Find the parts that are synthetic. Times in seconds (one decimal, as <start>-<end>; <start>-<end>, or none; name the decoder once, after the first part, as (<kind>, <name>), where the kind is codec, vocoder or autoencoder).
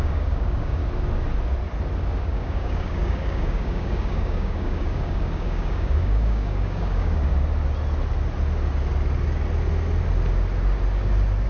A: 0.0-0.8 (codec, DAC); 2.2-7.3